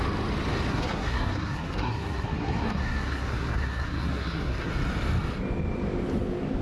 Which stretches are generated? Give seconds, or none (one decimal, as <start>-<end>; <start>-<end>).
0.7-4.7